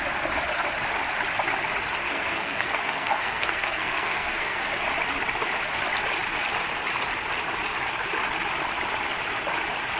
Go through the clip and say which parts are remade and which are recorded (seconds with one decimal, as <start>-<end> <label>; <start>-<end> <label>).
0.0-2.0 recorded; 2.0-4.7 remade; 4.7-10.0 recorded